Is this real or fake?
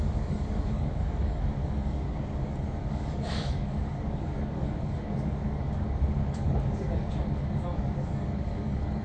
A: fake